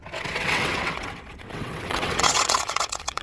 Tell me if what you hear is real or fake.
fake